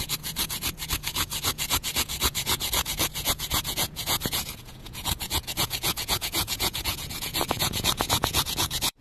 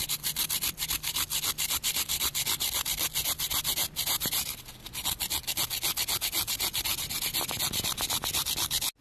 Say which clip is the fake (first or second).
first